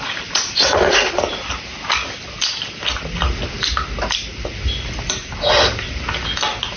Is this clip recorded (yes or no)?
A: yes